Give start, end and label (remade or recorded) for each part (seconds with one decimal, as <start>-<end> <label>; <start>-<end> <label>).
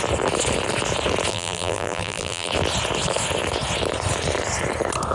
0.0-1.3 recorded; 1.3-2.5 remade; 2.5-5.1 recorded